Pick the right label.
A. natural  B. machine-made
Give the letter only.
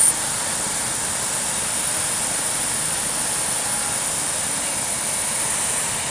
A